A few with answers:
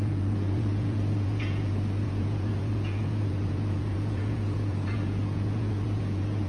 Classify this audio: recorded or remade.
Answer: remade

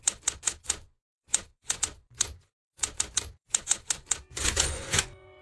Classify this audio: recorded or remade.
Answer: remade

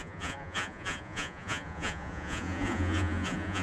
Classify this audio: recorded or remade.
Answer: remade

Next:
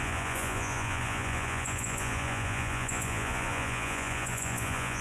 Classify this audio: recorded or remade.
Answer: remade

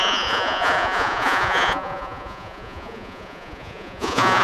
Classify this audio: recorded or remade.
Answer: remade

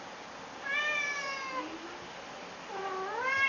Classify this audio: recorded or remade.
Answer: recorded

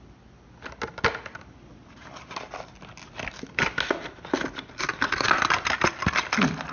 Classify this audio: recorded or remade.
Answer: recorded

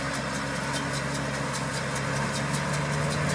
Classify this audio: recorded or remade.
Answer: recorded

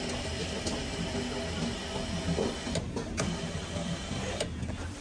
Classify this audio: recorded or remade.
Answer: recorded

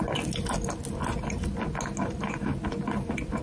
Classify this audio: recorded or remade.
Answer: recorded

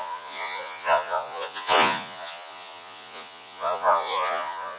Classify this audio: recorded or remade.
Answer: remade